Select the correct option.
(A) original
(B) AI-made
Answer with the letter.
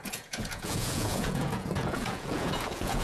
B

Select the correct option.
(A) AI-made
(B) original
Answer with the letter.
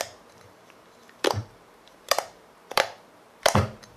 A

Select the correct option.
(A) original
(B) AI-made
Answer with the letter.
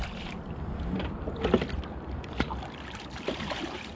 B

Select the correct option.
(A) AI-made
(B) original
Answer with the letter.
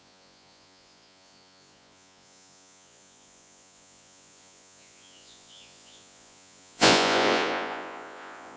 A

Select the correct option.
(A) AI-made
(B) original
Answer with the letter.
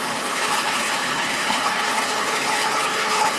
A